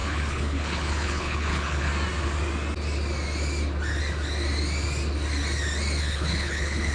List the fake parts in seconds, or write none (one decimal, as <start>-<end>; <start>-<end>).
0.0-1.9; 6.0-6.9